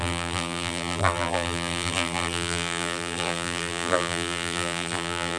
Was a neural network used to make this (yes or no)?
yes